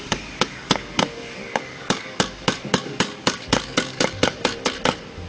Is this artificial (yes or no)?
yes